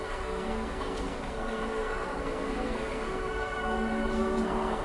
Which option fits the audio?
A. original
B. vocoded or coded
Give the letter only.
B